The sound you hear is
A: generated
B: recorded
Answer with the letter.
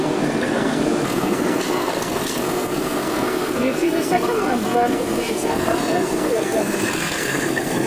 A